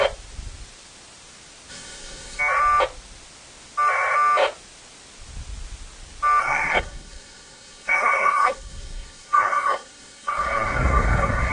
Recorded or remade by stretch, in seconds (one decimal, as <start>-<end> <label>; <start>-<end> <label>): 0.0-1.7 recorded; 1.7-2.4 remade; 2.4-6.4 recorded; 6.4-11.5 remade